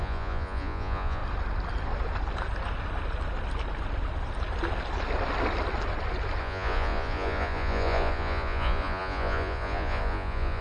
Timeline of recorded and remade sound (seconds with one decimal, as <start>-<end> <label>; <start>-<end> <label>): 0.0-1.2 remade; 1.2-6.4 recorded; 6.4-10.6 remade

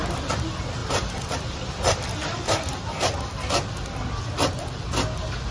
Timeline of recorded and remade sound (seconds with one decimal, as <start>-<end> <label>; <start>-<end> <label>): 0.0-0.8 recorded; 0.8-4.1 remade; 4.1-5.5 recorded

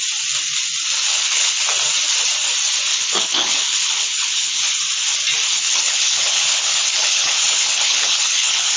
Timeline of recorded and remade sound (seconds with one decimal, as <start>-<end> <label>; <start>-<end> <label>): 0.0-1.1 recorded; 1.1-1.6 remade; 1.6-2.9 recorded; 2.9-4.6 remade; 4.6-5.5 recorded; 5.5-8.8 remade